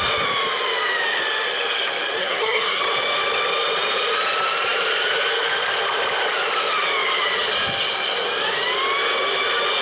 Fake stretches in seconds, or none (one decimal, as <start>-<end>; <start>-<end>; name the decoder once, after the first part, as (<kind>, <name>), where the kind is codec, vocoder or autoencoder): 2.2-2.8 (codec, SNAC)